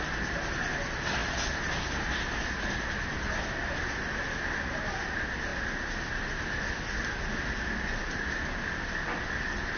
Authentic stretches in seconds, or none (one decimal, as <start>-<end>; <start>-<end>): 0.0-9.8